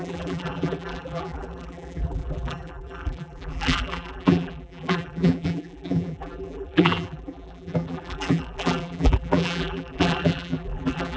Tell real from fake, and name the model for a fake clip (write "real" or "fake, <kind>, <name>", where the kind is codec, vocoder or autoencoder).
fake, vocoder, BigVGAN v2